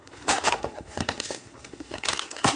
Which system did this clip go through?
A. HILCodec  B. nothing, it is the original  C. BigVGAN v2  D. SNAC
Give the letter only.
D